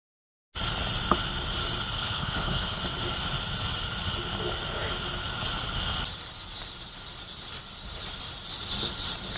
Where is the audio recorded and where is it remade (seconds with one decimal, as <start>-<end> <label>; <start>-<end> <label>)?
0.0-2.0 recorded; 2.0-2.8 remade; 2.8-9.4 recorded